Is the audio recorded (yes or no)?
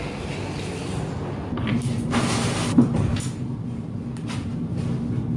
yes